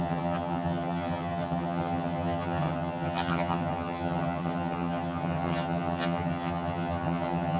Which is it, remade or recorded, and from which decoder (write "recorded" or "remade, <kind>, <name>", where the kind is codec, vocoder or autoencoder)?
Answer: remade, vocoder, HiFi-GAN